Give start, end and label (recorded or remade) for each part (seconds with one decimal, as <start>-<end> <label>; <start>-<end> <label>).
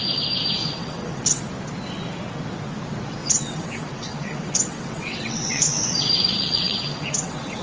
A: 0.0-0.6 recorded; 0.6-1.4 remade; 1.4-3.2 recorded; 3.2-7.6 remade